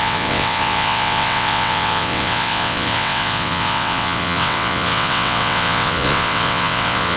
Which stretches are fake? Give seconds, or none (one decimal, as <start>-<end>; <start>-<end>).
0.0-7.2